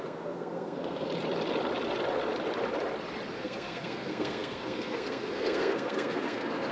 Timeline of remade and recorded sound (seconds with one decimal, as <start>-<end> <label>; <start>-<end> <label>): 0.0-1.1 remade; 1.1-3.3 recorded; 3.3-6.7 remade

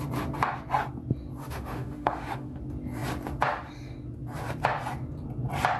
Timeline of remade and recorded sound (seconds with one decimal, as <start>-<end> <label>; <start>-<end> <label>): 0.0-1.4 recorded; 1.4-2.6 remade; 2.6-5.8 recorded

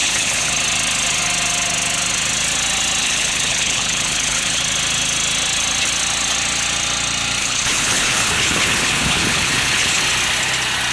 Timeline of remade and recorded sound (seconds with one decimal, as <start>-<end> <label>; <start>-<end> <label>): 0.0-0.5 remade; 0.5-3.0 recorded; 3.0-4.6 remade; 4.6-7.4 recorded; 7.4-10.0 remade; 10.0-10.9 recorded

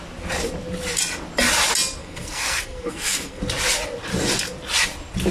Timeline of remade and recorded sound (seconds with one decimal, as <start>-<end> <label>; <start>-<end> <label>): 0.0-2.0 recorded; 2.0-3.4 remade; 3.4-5.3 recorded

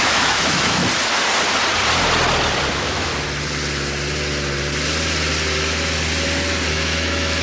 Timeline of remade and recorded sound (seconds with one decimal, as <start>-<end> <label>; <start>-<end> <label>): 0.0-0.8 remade; 0.8-2.7 recorded; 2.7-3.1 remade; 3.1-6.7 recorded; 6.7-7.4 remade

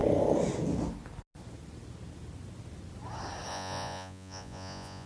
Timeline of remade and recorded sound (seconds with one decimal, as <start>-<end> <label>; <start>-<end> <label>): 0.0-3.5 recorded; 3.5-5.1 remade

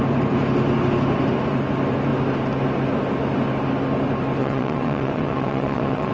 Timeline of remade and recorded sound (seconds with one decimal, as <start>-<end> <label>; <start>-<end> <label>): 0.0-4.4 recorded; 4.4-6.1 remade

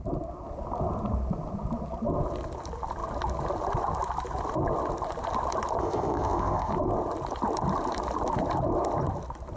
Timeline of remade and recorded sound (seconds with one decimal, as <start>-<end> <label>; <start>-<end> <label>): 0.0-5.8 recorded; 5.8-6.7 remade; 6.7-9.6 recorded